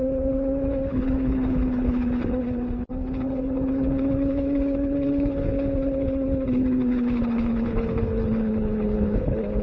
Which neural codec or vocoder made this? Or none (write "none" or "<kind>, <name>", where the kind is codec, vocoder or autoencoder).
codec, HILCodec